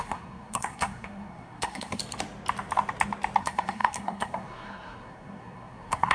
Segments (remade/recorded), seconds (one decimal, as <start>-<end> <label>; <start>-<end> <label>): 0.0-2.0 remade; 2.0-3.4 recorded; 3.4-6.1 remade

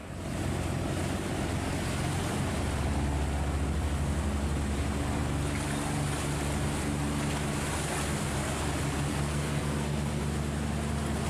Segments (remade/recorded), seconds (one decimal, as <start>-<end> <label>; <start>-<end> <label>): 0.0-9.1 recorded; 9.1-10.2 remade; 10.2-11.3 recorded

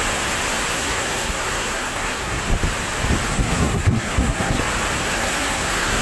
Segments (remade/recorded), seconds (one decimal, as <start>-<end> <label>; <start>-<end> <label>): 0.0-0.7 recorded; 0.7-2.4 remade; 2.4-3.3 recorded; 3.3-4.6 remade; 4.6-5.0 recorded; 5.0-6.0 remade

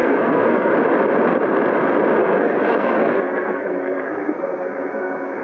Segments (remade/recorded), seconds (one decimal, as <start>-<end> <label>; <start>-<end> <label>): 0.0-0.7 remade; 0.7-2.2 recorded; 2.2-5.4 remade

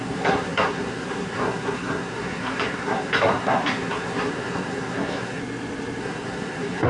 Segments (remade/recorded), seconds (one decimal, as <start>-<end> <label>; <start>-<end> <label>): 0.0-5.4 remade; 5.4-6.0 recorded; 6.0-6.9 remade

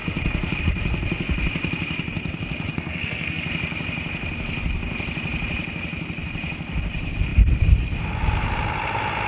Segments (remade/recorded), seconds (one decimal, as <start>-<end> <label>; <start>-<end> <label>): 0.0-2.7 recorded; 2.7-3.4 remade; 3.4-9.3 recorded